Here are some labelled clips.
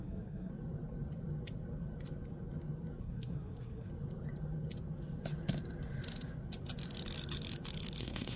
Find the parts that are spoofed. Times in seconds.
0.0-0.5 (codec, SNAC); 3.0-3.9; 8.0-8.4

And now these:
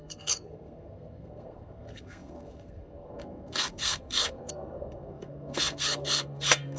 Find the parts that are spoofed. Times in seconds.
0.0-6.8 (codec, SNAC)